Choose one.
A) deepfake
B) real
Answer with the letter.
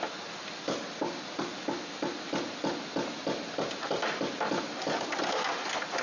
B